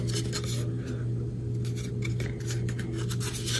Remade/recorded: recorded